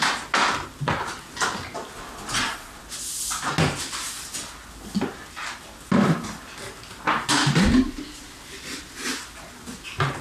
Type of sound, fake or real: real